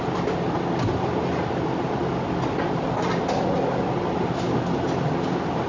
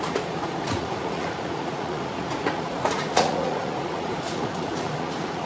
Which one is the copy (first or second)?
second